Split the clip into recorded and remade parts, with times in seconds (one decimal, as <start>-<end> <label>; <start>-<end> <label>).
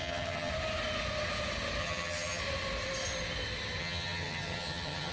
0.0-0.5 remade; 0.5-1.8 recorded; 1.8-2.4 remade; 2.4-3.8 recorded; 3.8-5.1 remade